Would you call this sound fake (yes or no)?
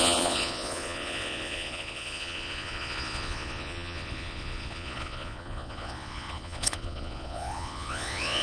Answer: yes